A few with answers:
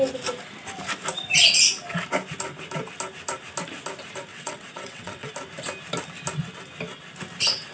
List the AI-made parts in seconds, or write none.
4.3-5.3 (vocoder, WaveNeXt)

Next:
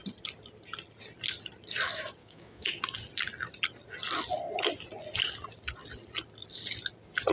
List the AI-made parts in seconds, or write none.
2.2-2.8 (autoencoder, DAC-VAE)

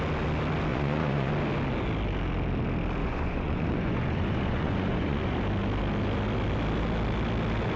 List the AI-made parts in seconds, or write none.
0.7-1.3 (vocoder, Vocos); 3.0-5.4

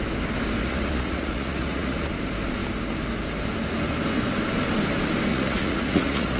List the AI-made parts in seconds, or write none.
0.6-2.1 (vocoder, Vocos); 5.3-6.4

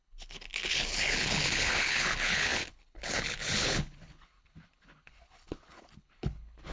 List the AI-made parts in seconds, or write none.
0.0-6.7 (codec, HILCodec)

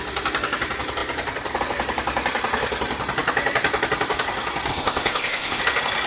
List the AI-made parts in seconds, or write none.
4.7-5.6 (codec, ZipCodec)